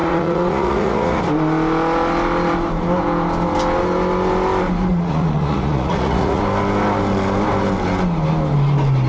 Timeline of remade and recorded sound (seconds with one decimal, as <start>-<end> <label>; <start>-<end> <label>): 0.0-1.2 remade; 1.2-4.9 recorded; 4.9-6.4 remade; 6.4-9.1 recorded